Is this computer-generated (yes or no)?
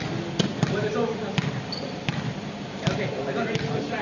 no